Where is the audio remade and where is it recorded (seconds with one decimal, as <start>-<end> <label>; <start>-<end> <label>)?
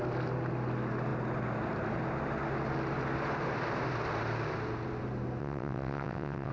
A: 0.0-5.4 recorded; 5.4-6.5 remade